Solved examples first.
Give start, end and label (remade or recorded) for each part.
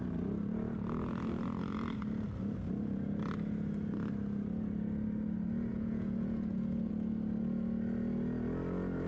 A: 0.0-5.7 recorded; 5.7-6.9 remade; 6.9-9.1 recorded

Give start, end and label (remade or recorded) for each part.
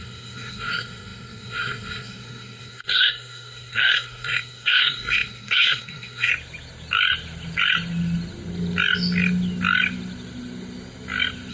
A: 0.0-6.3 remade; 6.3-11.5 recorded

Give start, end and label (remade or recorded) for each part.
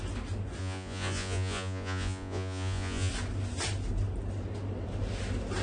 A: 0.0-0.6 recorded; 0.6-3.1 remade; 3.1-5.6 recorded